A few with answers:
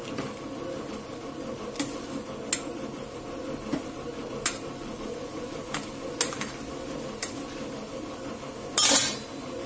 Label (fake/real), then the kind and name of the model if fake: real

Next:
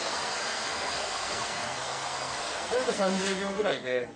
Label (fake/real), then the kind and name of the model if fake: fake, codec, SNAC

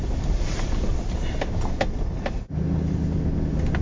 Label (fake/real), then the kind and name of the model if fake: real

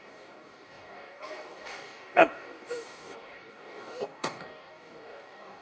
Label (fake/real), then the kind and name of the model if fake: fake, codec, DAC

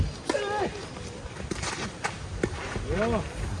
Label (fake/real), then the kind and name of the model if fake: real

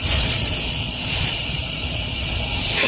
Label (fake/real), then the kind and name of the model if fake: fake, vocoder, Vocos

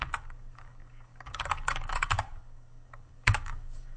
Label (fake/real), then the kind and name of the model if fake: fake, codec, DAC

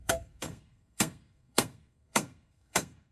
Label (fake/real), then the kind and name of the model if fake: fake, codec, SNAC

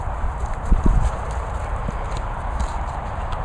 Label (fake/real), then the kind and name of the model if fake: fake, vocoder, BigVGAN v2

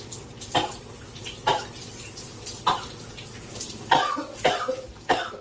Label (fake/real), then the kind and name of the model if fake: real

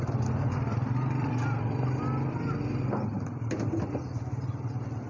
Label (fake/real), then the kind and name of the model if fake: real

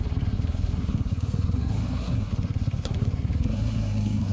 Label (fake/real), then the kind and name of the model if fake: fake, codec, SNAC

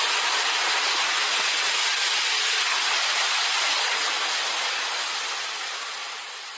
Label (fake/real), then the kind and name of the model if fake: real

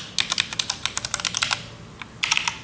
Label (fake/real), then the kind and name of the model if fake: real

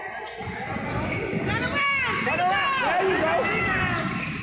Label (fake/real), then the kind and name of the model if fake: real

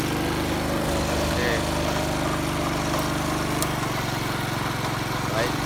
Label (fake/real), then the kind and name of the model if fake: real